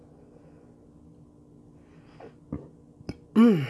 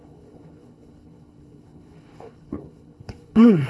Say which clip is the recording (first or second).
first